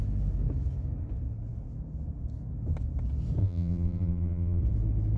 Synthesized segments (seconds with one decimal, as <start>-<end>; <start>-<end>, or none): 3.4-4.6